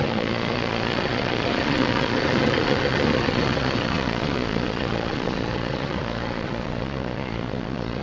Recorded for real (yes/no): no